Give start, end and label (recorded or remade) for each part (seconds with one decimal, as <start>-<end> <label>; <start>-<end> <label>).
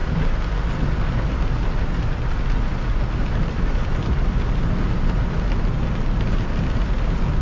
0.0-7.4 recorded